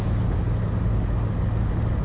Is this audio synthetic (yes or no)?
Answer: no